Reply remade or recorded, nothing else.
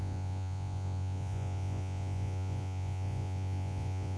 remade